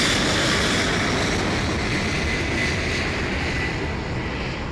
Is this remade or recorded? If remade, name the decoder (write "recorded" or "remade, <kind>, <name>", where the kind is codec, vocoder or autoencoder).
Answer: remade, vocoder, BigVGAN v2